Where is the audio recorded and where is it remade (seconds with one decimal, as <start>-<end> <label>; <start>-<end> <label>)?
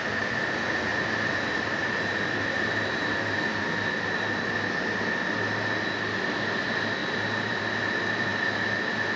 0.0-0.9 recorded; 0.9-3.6 remade; 3.6-7.0 recorded; 7.0-7.6 remade; 7.6-9.2 recorded